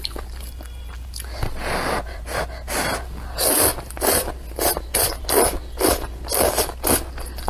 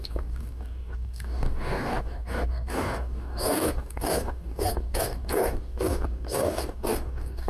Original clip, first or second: first